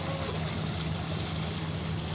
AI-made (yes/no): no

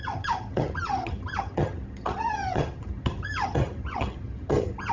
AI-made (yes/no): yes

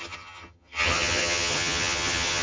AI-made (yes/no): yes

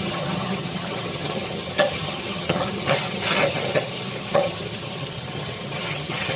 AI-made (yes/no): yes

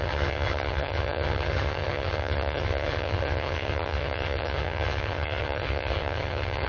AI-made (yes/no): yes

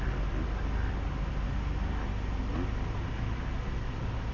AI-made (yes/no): no